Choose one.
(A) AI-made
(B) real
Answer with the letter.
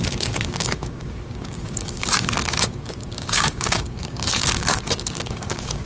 A